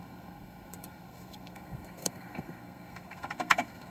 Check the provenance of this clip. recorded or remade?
remade